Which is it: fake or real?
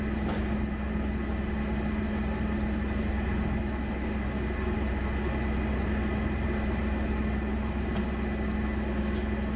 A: real